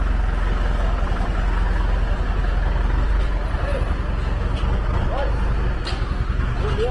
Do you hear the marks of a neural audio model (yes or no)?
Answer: no